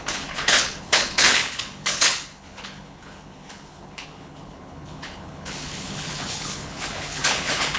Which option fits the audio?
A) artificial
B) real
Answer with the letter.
A